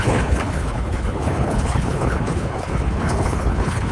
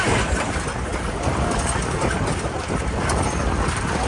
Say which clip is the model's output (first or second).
first